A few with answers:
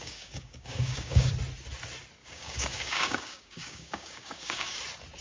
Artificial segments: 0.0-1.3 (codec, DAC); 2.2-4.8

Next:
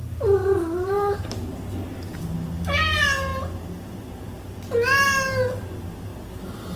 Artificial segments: 0.4-1.5 (vocoder, BigVGAN v2)

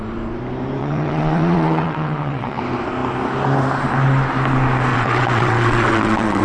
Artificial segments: 0.8-2.6 (vocoder, WaveNeXt); 4.9-6.4